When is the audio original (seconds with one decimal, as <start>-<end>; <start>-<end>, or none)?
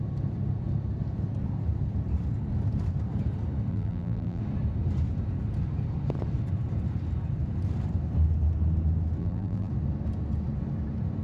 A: 0.0-3.7; 4.4-9.2; 9.7-11.2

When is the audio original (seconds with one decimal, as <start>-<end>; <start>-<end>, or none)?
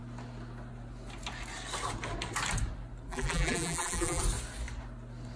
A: 0.0-3.1; 4.2-5.4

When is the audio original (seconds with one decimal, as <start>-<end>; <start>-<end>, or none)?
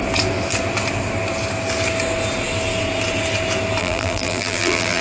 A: 0.0-3.8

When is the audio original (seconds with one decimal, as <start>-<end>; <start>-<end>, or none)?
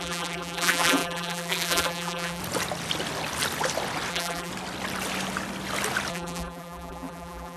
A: 2.4-4.1; 4.5-6.1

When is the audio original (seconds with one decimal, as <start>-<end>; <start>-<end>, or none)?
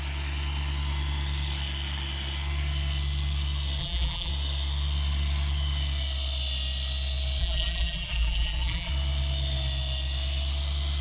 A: 0.0-3.8; 4.3-7.4; 8.9-11.0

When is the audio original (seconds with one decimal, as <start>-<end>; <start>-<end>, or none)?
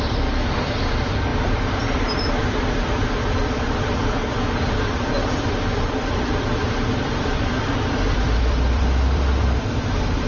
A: 4.2-5.1; 7.7-8.4